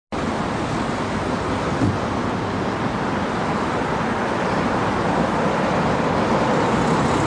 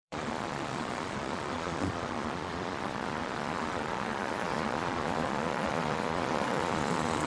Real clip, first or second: first